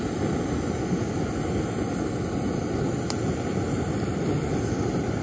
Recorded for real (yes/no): yes